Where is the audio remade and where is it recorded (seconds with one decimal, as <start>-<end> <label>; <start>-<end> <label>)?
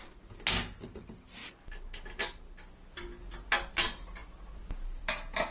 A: 0.0-5.5 recorded